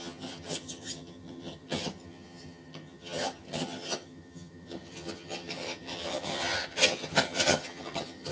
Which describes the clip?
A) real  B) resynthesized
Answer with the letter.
B